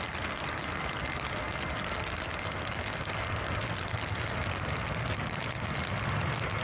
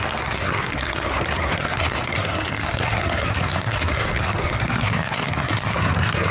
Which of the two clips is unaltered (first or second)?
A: first